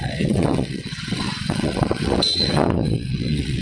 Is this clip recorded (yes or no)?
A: no